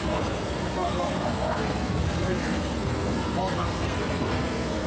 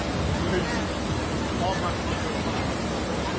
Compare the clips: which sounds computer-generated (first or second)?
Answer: first